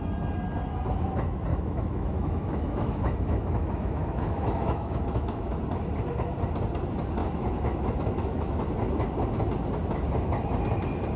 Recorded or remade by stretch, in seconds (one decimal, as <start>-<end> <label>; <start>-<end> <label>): 0.0-1.5 recorded; 1.5-5.5 remade; 5.5-7.2 recorded; 7.2-8.6 remade; 8.6-11.2 recorded